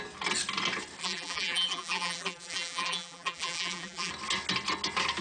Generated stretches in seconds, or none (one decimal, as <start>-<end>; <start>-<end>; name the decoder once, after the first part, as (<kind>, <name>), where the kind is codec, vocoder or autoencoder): 1.0-4.1 (vocoder, BigVGAN v2)